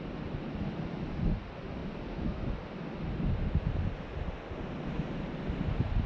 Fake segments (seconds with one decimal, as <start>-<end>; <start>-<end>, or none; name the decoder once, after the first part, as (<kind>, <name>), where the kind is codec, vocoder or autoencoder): none